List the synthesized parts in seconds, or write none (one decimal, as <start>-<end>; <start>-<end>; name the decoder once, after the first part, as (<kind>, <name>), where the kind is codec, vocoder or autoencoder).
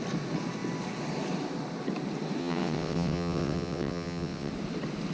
2.4-4.5 (vocoder, WaveNeXt)